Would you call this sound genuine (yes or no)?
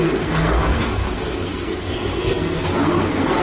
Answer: no